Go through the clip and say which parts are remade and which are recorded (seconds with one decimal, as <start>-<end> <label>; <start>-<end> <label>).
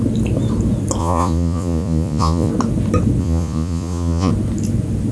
0.0-1.0 recorded; 1.0-2.5 remade; 2.5-3.2 recorded; 3.2-4.3 remade; 4.3-5.1 recorded